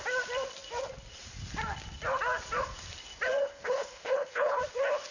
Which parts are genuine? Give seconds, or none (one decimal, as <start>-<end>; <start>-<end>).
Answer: 0.0-3.4; 4.6-5.1